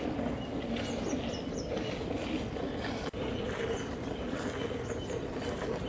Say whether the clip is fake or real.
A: real